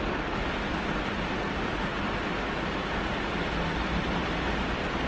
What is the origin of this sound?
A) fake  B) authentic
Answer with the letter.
B